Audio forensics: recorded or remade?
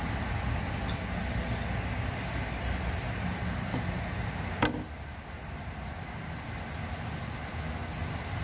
recorded